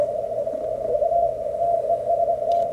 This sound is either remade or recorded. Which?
recorded